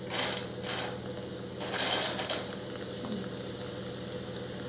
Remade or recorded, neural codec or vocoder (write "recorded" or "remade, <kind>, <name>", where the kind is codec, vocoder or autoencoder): recorded